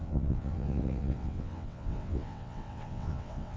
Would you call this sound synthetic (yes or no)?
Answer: yes